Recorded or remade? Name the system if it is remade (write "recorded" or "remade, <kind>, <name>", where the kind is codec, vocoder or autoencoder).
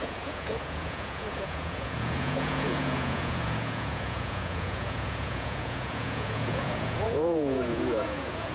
remade, vocoder, Vocos